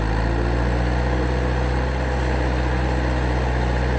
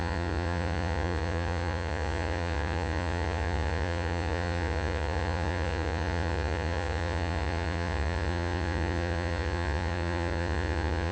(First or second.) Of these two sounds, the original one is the first